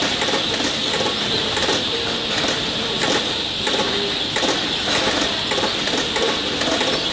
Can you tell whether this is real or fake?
real